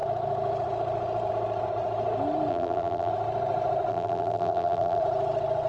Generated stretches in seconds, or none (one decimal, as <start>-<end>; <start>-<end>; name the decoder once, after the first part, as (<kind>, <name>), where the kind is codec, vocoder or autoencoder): 2.5-3.1 (vocoder, BigVGAN v2); 3.9-5.0